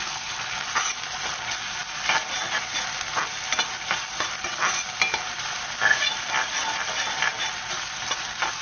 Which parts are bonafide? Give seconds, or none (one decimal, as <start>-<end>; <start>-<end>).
0.0-8.6